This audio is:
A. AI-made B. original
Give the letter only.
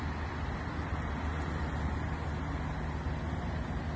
B